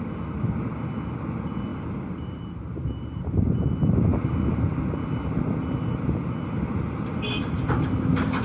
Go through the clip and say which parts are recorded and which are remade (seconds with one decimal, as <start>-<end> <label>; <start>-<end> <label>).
0.0-1.7 recorded; 1.7-3.3 remade; 3.3-8.4 recorded